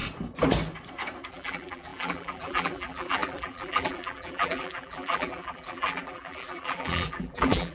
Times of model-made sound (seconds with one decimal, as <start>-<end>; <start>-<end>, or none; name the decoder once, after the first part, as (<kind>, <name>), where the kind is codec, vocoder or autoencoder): 1.3-7.7 (vocoder, BigVGAN v2)